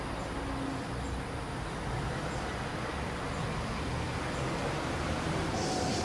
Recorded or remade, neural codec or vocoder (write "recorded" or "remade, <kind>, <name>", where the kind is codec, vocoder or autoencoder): recorded